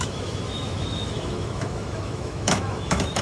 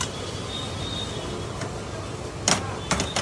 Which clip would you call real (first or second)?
second